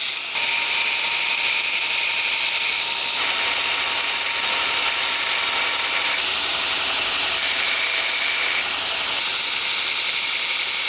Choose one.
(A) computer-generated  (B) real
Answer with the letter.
B